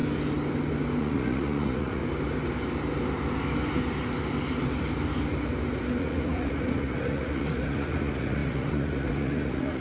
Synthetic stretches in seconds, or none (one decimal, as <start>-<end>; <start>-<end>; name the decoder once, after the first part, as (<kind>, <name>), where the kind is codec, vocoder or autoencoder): 1.0-2.0 (vocoder, Vocos); 6.0-9.8